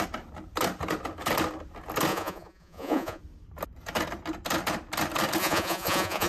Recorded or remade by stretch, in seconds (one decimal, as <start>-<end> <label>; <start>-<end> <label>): 0.0-2.1 recorded; 2.1-3.2 remade; 3.2-5.4 recorded; 5.4-6.3 remade